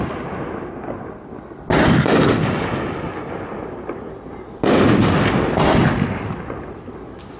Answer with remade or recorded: recorded